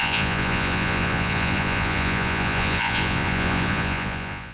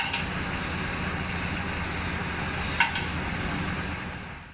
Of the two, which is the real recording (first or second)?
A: second